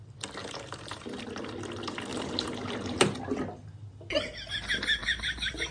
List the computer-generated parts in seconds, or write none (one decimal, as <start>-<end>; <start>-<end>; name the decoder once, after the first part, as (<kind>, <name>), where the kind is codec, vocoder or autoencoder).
0.4-1.2 (vocoder, BigVGAN v2); 2.1-3.0; 5.0-5.7